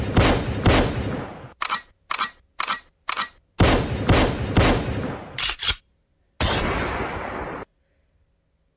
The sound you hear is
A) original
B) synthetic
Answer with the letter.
A